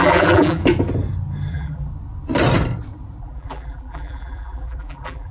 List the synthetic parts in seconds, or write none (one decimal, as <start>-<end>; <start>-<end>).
0.0-0.6; 1.5-1.9; 3.2-5.3